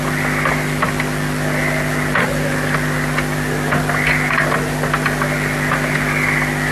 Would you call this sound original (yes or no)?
yes